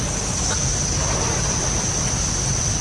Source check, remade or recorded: recorded